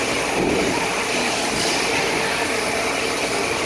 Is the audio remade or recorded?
recorded